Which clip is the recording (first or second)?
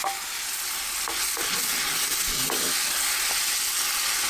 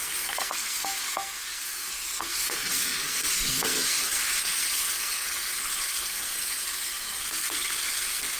first